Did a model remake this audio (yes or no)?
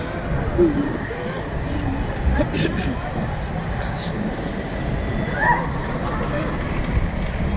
no